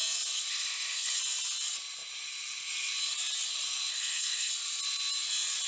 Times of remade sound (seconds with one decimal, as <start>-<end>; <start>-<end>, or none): 0.5-1.2; 3.9-4.5